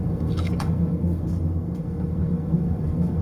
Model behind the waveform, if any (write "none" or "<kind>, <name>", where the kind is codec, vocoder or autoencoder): codec, SNAC